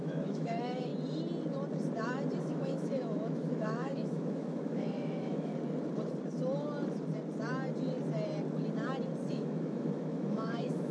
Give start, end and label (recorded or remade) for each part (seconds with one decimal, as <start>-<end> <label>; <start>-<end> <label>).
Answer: 0.0-0.9 remade; 0.9-2.4 recorded; 2.4-5.5 remade; 5.5-9.3 recorded; 9.3-10.9 remade